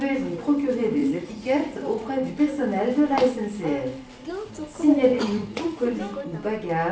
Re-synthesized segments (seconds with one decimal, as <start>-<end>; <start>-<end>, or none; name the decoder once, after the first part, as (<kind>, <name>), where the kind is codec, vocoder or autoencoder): 1.0-2.3 (vocoder, Vocos); 5.1-6.0